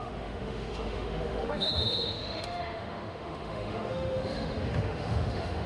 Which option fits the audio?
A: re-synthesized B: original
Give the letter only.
A